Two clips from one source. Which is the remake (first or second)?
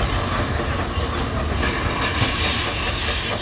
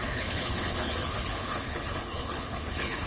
second